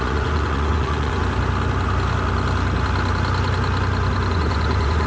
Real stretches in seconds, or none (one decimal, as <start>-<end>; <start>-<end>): 1.2-4.3